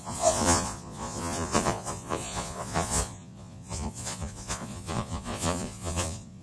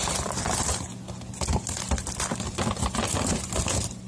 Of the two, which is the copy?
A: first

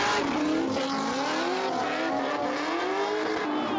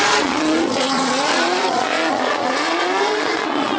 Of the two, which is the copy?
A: second